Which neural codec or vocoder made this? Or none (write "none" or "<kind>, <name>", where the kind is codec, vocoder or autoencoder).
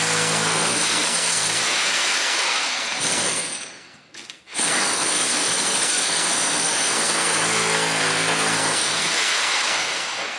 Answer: codec, SNAC